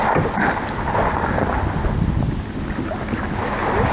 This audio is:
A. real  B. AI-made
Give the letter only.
A